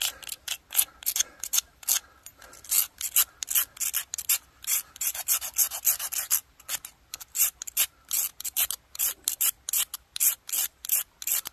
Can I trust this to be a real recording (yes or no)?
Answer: yes